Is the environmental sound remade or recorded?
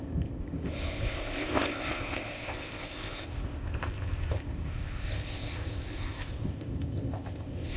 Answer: remade